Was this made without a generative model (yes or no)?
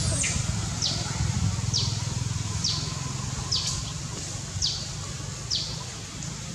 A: yes